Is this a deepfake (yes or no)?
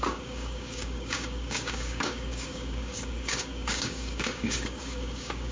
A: yes